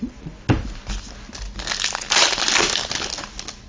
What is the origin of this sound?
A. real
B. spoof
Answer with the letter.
A